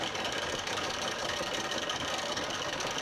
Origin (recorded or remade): remade